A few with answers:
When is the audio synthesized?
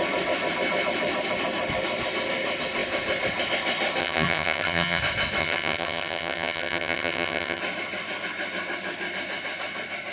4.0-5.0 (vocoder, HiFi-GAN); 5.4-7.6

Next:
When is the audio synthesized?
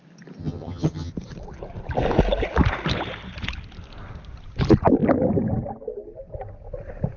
0.4-1.1 (vocoder, HiFi-GAN)